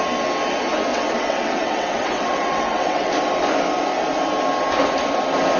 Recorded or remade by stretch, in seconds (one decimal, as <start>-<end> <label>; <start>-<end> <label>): 0.0-0.9 recorded; 0.9-3.1 remade; 3.1-5.6 recorded